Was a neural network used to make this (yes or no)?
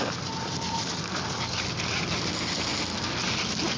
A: no